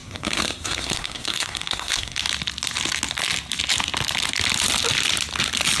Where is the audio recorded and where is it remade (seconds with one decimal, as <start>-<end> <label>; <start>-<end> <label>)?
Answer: 0.0-2.2 remade; 2.2-5.8 recorded